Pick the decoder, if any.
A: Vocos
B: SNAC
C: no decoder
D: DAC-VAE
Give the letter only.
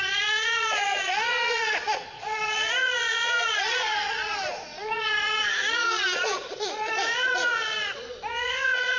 A